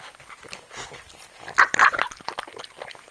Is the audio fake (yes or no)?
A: no